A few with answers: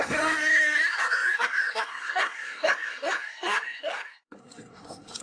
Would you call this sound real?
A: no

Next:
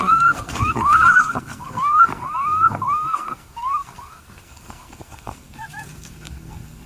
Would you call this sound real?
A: no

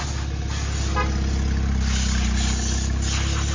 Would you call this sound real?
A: yes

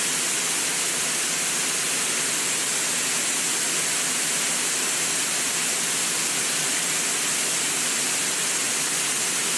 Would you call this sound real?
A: yes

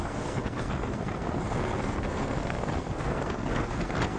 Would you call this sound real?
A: no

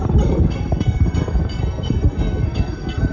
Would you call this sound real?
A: no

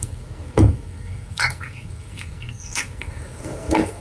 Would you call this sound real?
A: no